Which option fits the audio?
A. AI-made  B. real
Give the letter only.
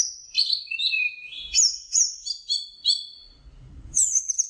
A